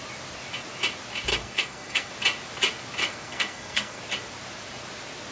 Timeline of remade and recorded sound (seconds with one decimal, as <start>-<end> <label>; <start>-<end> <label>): 0.0-1.3 recorded; 1.3-2.1 remade; 2.1-3.0 recorded; 3.0-4.0 remade; 4.0-5.3 recorded